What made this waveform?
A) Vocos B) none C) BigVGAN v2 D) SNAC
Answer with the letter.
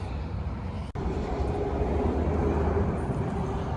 B